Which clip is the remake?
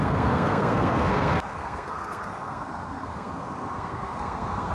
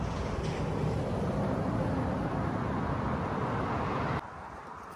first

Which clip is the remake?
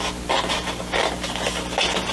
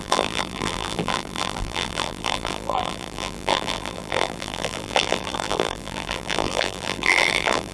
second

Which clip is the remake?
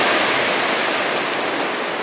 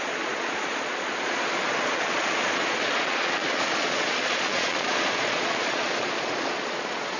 second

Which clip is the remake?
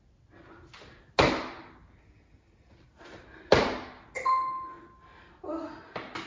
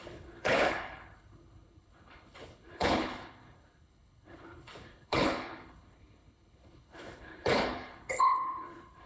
second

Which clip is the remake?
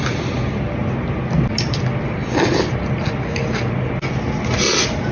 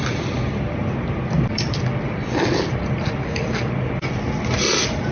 second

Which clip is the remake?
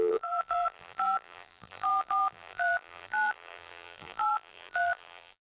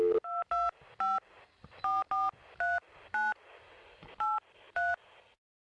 first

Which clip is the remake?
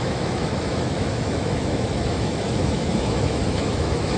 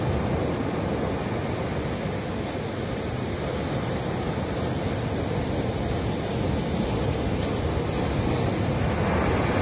first